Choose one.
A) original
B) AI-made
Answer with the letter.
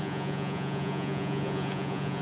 B